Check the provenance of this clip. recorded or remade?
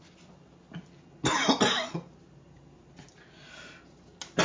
recorded